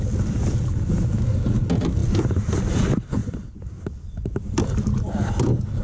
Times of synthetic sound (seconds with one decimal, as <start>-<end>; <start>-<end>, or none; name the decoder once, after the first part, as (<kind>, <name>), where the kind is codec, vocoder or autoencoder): 2.0-2.5 (vocoder, BigVGAN v2); 3.2-4.6